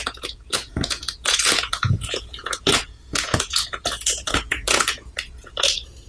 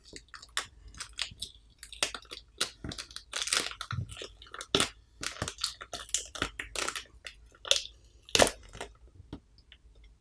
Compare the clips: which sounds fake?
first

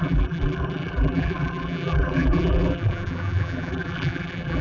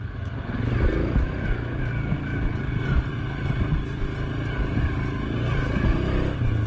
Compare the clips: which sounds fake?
first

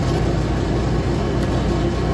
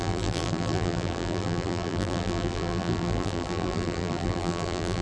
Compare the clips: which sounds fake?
second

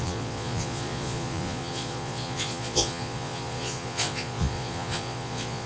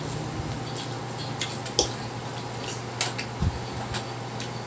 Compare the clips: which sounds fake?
first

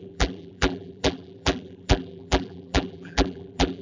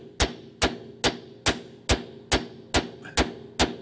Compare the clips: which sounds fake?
first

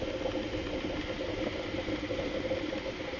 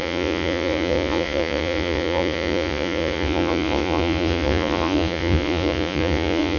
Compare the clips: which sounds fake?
second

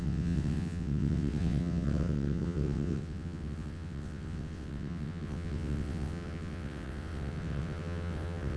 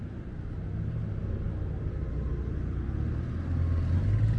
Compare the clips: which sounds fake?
first